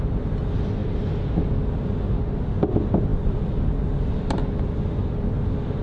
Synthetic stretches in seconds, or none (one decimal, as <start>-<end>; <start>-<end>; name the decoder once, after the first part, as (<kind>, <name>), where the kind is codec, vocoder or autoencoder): none